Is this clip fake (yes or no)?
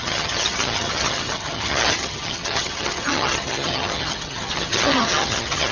yes